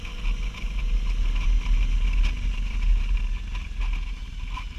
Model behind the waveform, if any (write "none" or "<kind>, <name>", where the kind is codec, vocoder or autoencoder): none